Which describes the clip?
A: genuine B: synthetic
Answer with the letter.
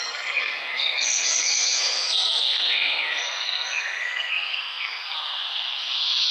B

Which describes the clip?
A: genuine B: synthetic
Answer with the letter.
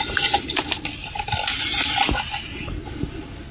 A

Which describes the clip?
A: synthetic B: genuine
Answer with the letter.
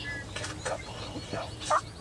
B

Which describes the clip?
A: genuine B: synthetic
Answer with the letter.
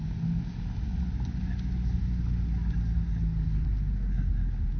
A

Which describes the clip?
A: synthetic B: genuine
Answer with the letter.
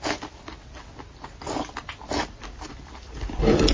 B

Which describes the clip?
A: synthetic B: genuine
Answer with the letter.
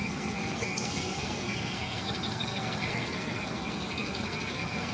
A